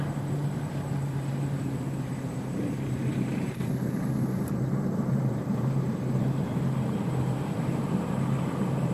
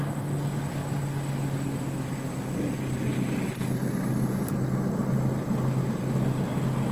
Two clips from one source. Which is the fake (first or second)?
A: first